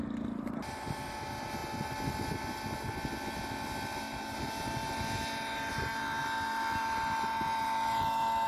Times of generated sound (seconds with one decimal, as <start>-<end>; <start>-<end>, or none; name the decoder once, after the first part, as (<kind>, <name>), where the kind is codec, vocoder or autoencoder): none